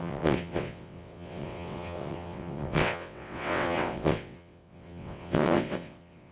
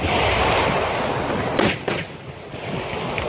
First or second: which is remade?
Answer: first